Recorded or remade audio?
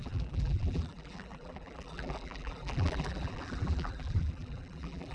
remade